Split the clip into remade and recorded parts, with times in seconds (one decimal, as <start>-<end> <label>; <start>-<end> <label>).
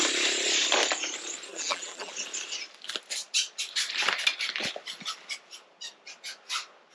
0.0-1.5 recorded; 1.5-2.1 remade; 2.1-6.9 recorded